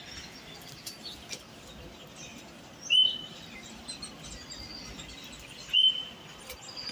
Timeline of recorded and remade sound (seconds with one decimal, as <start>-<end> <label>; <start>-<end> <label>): 0.0-6.9 recorded